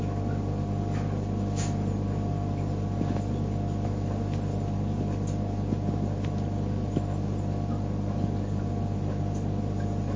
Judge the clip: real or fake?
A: real